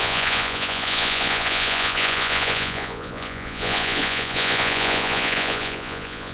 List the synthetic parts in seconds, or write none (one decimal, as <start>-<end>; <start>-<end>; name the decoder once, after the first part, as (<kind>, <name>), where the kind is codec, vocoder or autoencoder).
0.0-6.3 (vocoder, Vocos)